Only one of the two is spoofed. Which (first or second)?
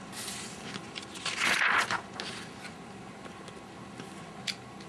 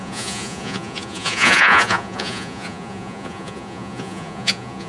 second